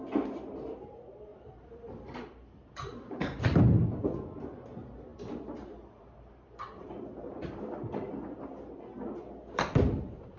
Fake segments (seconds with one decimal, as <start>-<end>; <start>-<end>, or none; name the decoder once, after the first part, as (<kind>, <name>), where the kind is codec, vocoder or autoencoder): 1.3-3.6 (vocoder, BigVGAN v2); 5.1-8.1